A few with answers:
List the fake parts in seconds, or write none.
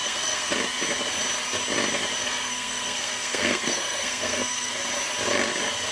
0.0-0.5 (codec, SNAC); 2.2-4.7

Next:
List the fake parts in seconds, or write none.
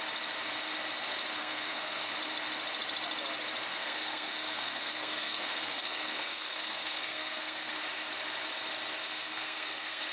1.4-2.1 (codec, SNAC); 3.7-7.7; 9.0-10.1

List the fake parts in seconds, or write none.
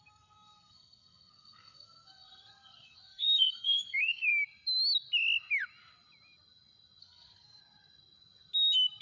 0.0-4.3 (codec, SNAC); 7.0-7.6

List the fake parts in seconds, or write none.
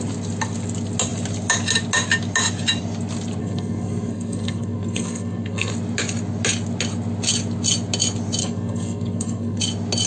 3.4-5.7 (codec, SNAC); 8.4-9.6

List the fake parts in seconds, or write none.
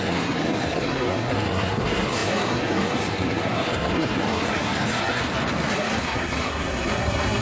0.0-5.2 (codec, SNAC); 5.7-7.4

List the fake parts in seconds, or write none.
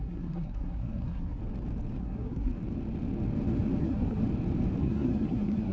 0.0-1.4 (codec, SNAC); 2.0-2.5; 3.8-4.2; 4.8-5.7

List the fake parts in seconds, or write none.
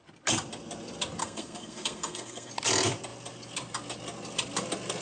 1.2-2.5 (codec, SNAC)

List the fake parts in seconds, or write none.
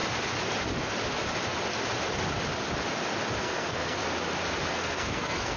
3.4-4.0 (codec, SNAC); 4.7-5.6